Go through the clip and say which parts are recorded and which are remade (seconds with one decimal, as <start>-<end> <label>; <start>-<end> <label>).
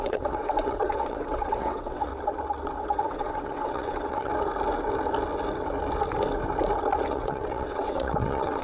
0.0-2.1 remade; 2.1-2.8 recorded; 2.8-4.3 remade; 4.3-7.1 recorded; 7.1-8.6 remade